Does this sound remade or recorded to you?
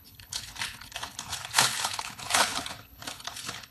remade